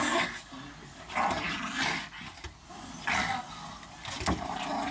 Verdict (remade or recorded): recorded